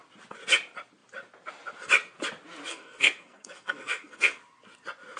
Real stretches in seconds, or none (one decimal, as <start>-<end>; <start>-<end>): 0.0-2.7; 4.4-5.2